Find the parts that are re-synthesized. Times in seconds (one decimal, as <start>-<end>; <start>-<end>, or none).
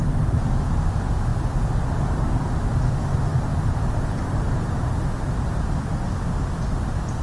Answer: none